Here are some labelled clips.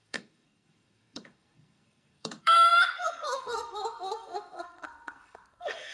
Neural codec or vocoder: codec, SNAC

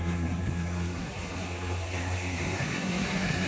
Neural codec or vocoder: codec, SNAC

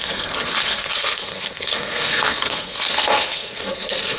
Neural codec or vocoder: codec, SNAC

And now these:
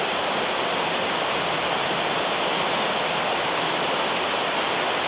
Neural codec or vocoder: none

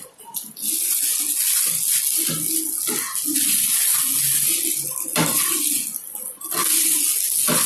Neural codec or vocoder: none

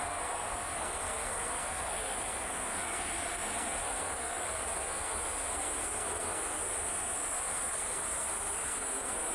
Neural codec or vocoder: codec, SNAC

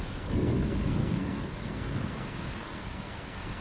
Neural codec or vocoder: codec, SNAC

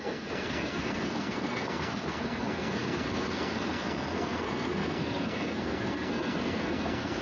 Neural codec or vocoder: codec, SNAC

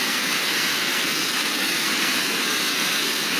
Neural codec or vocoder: codec, SNAC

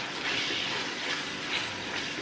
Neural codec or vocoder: none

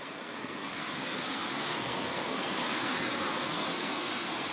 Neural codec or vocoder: codec, SNAC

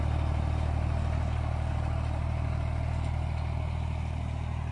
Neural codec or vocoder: none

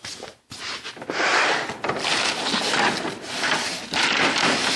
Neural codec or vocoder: none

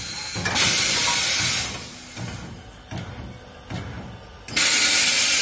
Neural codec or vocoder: none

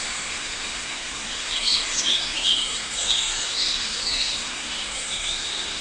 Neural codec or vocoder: codec, SNAC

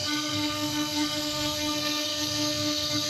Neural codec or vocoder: codec, SNAC